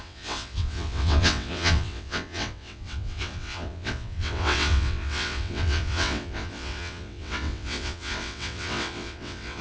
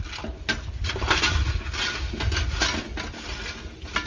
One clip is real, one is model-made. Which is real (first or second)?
second